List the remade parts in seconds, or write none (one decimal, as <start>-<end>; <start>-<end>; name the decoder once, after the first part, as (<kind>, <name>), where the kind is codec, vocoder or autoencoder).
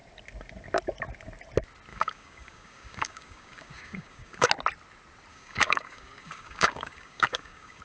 1.9-4.5 (codec, DAC); 5.3-7.8